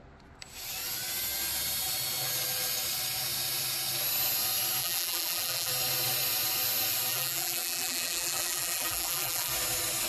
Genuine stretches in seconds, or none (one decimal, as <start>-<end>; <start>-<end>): 0.0-4.8; 5.7-7.1; 9.5-10.1